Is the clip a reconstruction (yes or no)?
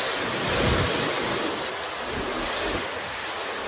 no